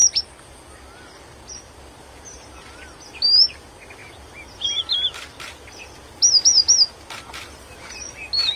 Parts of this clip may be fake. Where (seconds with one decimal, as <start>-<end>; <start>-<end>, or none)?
none